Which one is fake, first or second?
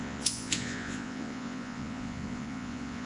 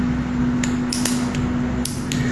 first